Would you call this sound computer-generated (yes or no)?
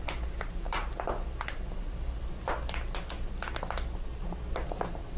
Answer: no